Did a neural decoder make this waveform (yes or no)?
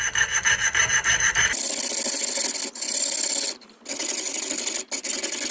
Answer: no